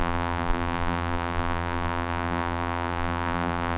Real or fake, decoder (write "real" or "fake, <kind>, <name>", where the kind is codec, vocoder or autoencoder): fake, vocoder, BigVGAN v2